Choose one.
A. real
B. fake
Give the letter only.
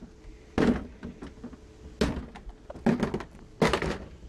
A